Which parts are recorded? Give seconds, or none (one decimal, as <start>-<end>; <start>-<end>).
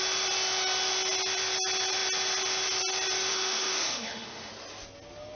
0.0-3.3; 4.5-5.4